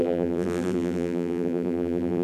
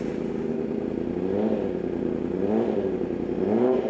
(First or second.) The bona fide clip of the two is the second